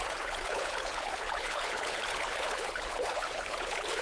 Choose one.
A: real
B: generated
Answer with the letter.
B